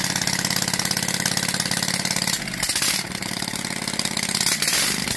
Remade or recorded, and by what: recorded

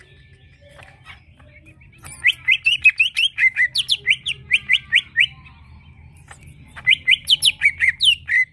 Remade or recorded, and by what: recorded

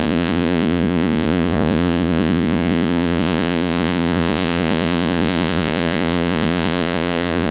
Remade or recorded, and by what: remade, vocoder, Vocos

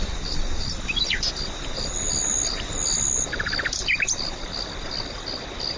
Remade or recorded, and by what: recorded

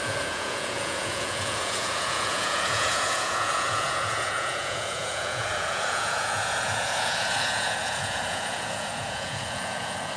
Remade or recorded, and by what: remade, vocoder, Vocos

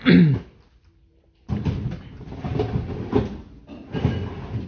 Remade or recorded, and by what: recorded